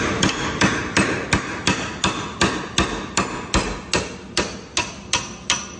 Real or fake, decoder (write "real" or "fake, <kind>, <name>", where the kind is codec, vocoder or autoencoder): real